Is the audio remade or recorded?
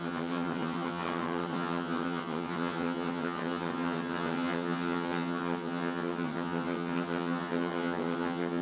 remade